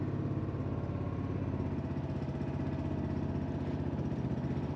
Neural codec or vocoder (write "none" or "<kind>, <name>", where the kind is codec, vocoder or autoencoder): none